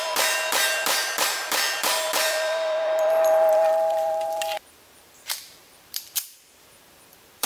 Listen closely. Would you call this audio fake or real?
fake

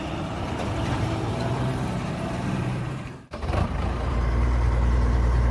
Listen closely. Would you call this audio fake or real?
fake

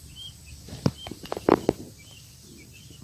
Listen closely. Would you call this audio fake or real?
real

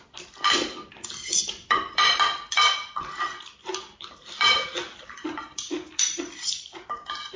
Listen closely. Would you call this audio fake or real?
fake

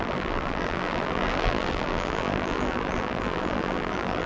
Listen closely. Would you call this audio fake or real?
fake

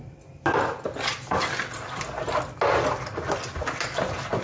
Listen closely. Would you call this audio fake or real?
real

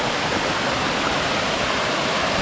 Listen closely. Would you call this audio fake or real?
fake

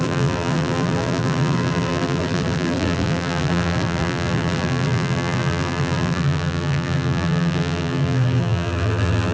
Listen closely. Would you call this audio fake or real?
fake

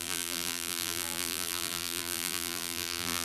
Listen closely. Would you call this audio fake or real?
fake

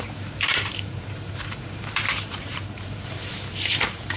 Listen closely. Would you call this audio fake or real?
fake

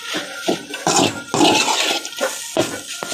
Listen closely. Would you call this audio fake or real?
real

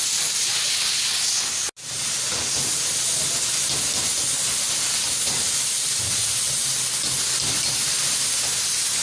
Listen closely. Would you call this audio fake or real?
real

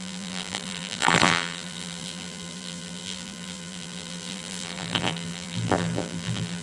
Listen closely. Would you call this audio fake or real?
fake